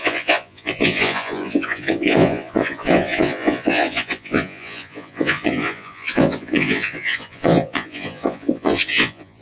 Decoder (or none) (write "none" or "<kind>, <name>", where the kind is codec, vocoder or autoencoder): vocoder, Vocos